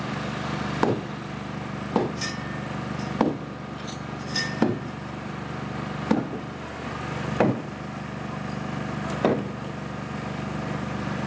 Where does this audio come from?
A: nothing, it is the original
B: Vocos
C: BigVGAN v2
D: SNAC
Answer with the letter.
A